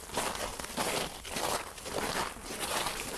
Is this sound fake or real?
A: real